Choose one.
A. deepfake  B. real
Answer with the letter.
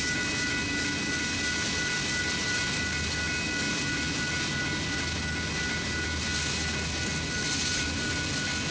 B